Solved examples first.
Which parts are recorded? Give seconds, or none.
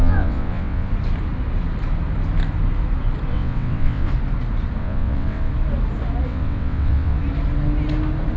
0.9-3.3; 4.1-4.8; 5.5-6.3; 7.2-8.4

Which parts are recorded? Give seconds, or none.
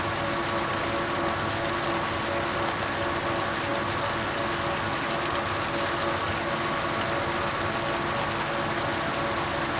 0.0-9.8